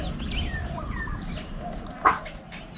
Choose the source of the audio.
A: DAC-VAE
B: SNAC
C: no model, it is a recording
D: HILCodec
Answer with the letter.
C